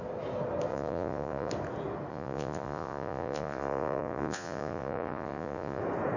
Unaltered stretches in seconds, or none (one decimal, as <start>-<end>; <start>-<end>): 0.0-0.7; 1.5-2.1; 5.8-6.2